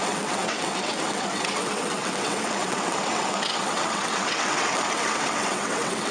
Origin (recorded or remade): remade